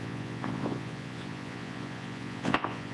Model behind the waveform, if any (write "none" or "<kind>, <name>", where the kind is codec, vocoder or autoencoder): vocoder, Vocos